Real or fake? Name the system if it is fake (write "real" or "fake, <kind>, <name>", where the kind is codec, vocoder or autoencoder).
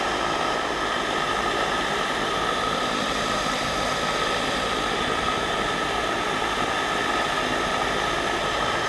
real